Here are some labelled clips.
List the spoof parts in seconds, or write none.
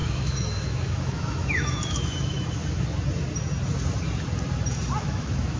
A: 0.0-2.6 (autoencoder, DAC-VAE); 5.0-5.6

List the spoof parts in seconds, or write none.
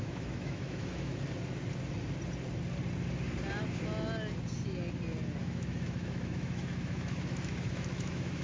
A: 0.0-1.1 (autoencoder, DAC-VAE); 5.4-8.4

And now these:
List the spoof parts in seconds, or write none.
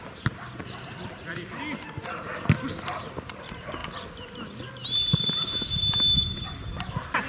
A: none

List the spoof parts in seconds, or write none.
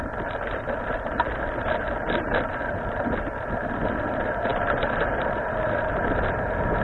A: none